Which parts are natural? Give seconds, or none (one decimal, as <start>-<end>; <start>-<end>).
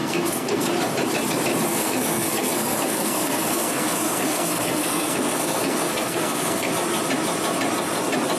0.7-1.7; 6.7-8.4